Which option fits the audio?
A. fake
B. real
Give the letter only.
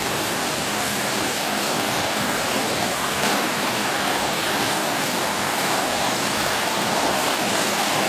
A